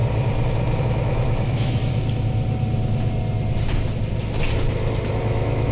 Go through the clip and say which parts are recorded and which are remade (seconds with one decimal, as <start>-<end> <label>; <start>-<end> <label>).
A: 0.0-0.8 recorded; 0.8-1.8 remade; 1.8-5.2 recorded; 5.2-5.7 remade